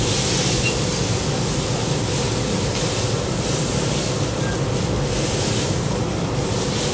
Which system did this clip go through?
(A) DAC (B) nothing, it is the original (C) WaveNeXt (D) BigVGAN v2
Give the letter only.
D